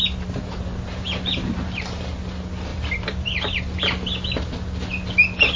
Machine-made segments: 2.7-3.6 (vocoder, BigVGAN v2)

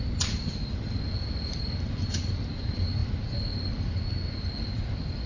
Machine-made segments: none

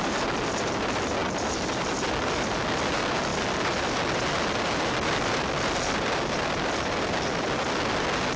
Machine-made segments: none